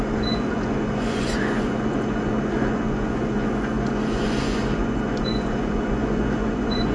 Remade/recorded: remade